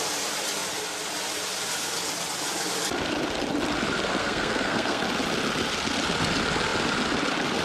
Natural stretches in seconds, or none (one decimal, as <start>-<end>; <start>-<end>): 0.0-4.2; 5.0-7.6